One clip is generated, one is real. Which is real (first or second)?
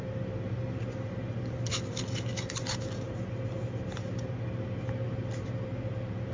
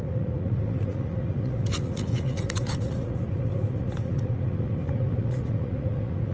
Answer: first